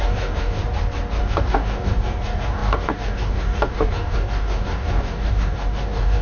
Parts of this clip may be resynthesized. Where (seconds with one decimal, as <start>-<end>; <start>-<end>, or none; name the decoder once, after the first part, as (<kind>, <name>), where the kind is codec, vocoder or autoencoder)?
0.0-0.6 (codec, DAC); 1.2-6.2